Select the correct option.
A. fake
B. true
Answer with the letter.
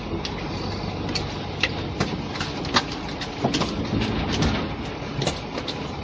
B